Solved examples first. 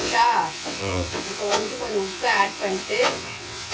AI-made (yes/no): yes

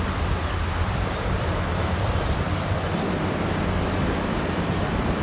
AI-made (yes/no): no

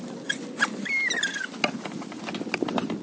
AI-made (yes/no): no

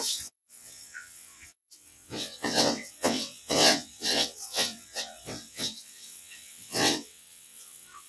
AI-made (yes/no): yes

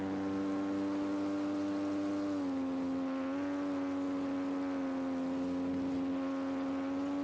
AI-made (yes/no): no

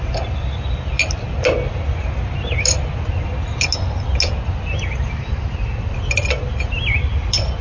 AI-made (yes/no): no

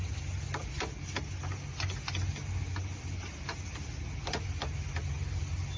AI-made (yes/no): no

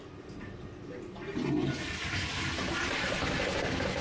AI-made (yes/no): no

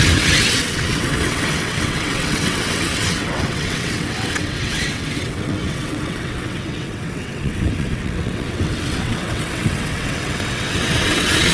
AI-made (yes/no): yes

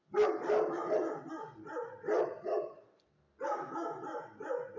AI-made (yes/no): no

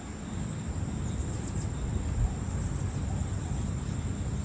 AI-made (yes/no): no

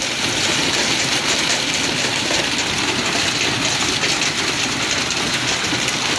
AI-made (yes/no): no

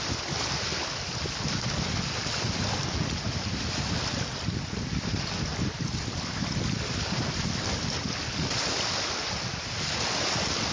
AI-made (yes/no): no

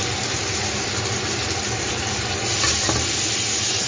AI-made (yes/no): no